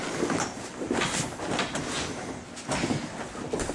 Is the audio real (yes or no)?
yes